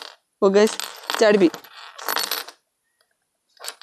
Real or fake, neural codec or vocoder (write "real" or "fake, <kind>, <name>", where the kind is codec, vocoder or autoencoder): real